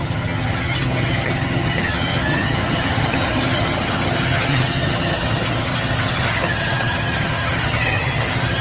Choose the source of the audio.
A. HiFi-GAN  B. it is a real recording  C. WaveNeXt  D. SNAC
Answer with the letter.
A